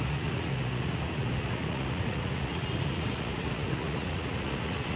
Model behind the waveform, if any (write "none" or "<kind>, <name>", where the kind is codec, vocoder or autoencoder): vocoder, Vocos